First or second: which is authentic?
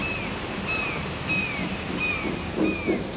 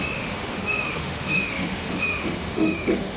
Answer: first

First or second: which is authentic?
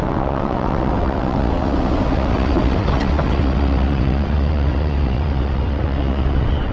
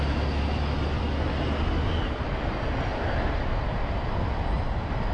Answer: second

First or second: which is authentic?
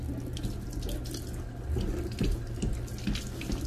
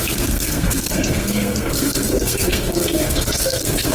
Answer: first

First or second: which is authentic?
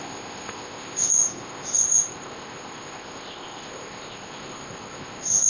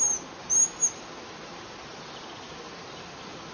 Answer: second